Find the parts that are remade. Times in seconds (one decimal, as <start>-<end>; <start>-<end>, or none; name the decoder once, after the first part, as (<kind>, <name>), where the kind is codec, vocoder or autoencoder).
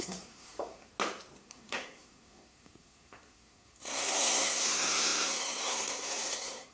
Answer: 0.0-0.9 (codec, SNAC); 1.4-6.7